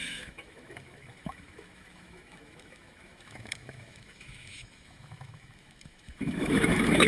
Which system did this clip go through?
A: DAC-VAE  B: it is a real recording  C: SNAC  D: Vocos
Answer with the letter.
A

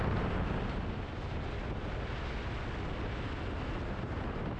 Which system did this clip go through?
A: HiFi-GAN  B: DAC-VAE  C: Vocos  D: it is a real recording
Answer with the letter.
D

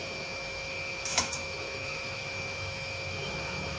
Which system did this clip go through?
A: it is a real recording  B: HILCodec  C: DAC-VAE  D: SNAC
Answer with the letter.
C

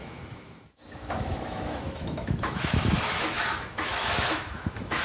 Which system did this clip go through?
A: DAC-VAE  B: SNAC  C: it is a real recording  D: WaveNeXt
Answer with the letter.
A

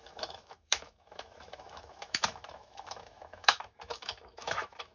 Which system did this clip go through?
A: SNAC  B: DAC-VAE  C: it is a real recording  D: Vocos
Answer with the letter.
B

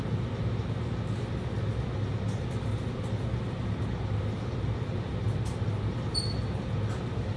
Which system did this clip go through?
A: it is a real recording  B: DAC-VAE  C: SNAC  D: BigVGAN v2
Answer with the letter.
A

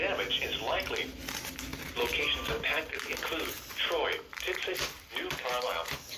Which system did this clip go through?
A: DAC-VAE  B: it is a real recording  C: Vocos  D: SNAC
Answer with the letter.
B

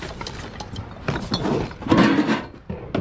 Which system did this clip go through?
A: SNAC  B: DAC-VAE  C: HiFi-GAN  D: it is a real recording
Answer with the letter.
D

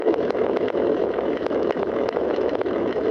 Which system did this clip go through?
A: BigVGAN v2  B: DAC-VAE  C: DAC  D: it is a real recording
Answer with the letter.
B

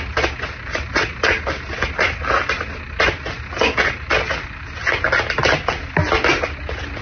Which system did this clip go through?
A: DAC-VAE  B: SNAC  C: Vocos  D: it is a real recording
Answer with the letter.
D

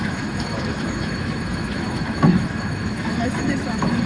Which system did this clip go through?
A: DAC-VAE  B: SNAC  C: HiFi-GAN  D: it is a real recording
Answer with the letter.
A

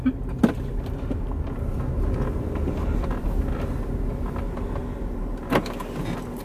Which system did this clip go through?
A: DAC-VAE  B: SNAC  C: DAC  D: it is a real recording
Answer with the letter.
D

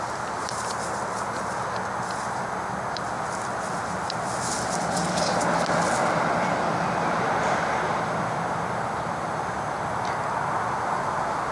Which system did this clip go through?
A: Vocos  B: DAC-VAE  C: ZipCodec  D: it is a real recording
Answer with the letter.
D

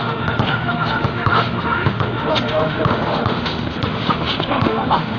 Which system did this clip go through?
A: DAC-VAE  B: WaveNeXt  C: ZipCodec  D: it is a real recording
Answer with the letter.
A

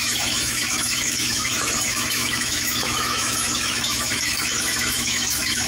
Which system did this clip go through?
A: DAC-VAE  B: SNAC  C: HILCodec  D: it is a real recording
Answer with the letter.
A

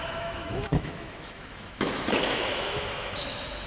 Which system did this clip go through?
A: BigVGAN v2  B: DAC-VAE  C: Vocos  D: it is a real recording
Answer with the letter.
B